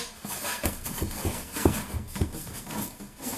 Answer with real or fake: fake